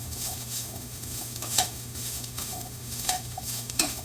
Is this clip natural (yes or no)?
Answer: no